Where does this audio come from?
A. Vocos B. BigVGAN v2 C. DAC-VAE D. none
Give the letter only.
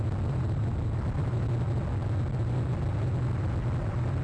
D